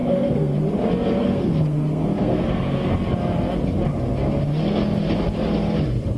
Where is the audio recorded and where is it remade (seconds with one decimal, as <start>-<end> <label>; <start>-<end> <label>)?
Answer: 0.0-0.6 remade; 0.6-1.2 recorded; 1.2-2.9 remade; 2.9-6.2 recorded